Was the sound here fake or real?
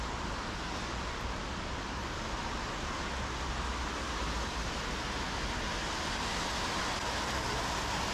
real